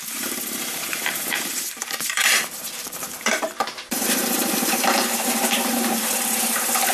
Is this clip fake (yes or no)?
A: yes